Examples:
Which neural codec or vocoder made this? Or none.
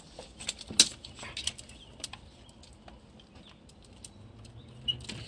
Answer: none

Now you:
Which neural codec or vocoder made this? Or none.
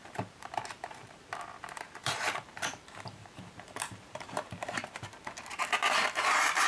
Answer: vocoder, BigVGAN v2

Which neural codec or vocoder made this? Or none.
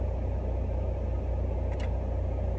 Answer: none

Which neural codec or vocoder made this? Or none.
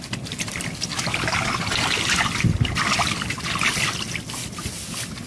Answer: none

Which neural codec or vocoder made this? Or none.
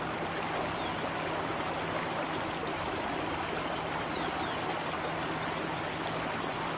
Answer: none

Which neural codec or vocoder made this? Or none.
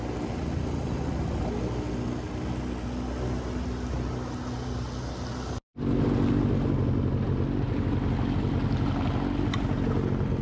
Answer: none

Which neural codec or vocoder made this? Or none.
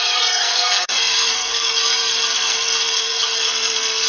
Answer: codec, SNAC